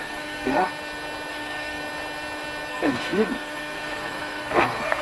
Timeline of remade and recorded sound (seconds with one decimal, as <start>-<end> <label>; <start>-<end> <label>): 0.0-0.7 remade; 0.7-1.3 recorded; 1.3-1.8 remade; 1.8-2.7 recorded; 2.7-5.0 remade